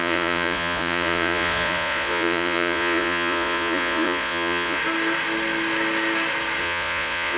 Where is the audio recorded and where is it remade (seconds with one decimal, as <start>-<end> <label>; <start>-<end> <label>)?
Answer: 0.0-4.8 remade; 4.8-6.6 recorded; 6.6-7.4 remade